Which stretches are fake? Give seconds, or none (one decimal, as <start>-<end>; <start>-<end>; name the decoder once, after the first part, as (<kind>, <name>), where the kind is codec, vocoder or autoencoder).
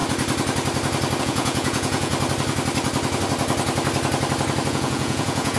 1.2-2.1 (vocoder, Vocos); 4.7-5.6